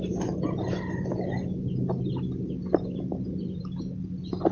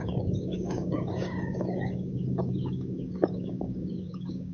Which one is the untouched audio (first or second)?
first